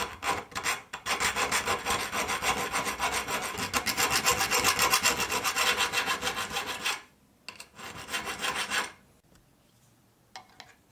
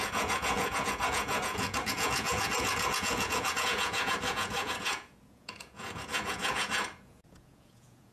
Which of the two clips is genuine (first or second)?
first